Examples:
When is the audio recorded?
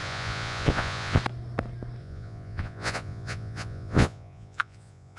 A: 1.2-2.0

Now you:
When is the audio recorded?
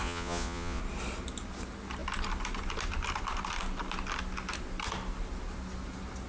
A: 0.8-6.3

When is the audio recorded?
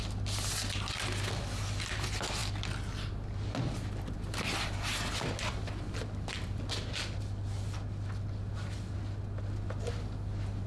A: 0.0-10.7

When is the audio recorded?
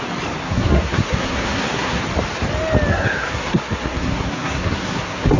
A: 0.0-0.4; 2.0-2.9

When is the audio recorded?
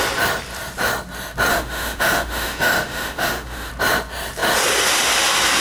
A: 0.0-1.5; 3.7-5.6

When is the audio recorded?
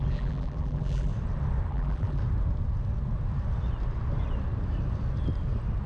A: 1.1-1.7; 2.2-5.9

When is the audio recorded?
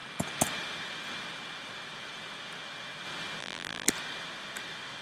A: 0.0-3.4; 3.9-5.0